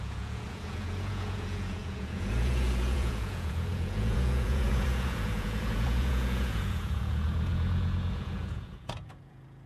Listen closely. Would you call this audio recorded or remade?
remade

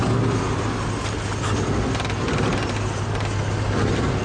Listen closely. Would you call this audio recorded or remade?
recorded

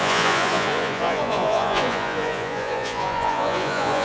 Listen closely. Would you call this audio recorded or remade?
remade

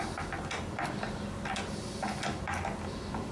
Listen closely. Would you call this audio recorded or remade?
recorded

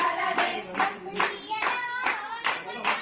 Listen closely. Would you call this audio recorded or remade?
recorded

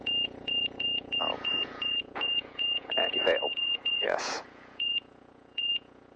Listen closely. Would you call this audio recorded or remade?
remade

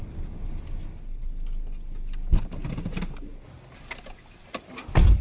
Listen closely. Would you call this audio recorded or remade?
recorded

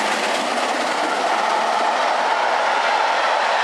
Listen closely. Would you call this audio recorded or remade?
recorded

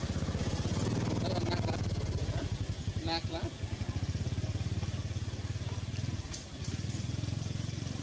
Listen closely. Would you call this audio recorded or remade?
recorded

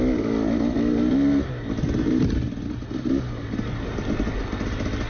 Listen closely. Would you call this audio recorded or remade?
recorded